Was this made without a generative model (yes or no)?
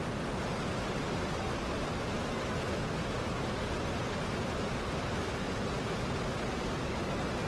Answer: yes